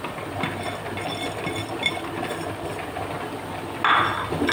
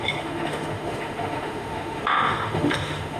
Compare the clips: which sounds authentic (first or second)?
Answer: first